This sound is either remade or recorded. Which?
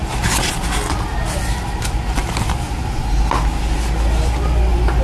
recorded